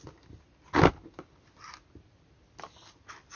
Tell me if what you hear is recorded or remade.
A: recorded